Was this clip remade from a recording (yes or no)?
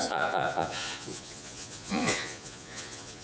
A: yes